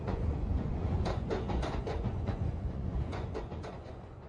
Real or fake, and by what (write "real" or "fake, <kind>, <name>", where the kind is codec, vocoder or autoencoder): fake, vocoder, Vocos